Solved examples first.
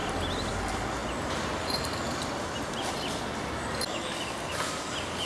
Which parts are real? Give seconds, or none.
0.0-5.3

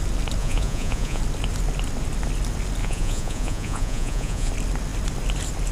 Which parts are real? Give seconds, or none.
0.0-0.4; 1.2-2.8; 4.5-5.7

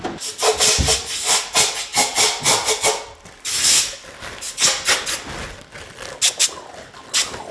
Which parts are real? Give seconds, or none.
0.0-7.5

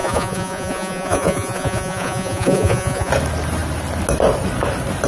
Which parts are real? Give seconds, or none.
3.1-5.1

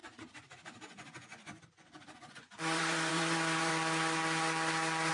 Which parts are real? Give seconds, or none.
3.7-5.1